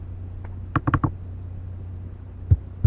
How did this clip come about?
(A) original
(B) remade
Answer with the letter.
A